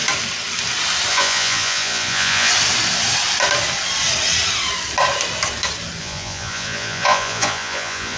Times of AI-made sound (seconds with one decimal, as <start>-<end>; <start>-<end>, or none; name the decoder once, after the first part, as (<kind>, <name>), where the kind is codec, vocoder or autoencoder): 1.1-2.5 (vocoder, Vocos); 6.0-8.2